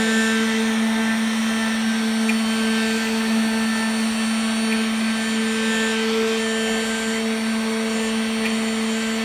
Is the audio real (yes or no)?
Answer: yes